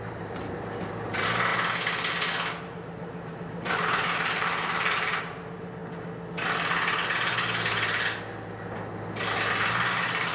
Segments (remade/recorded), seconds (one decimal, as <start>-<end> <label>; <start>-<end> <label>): 0.0-1.5 remade; 1.5-2.6 recorded; 2.6-5.8 remade; 5.8-9.7 recorded; 9.7-10.3 remade